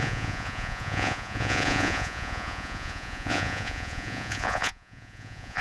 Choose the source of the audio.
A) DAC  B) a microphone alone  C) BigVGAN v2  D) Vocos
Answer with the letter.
D